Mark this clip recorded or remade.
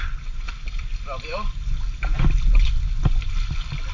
recorded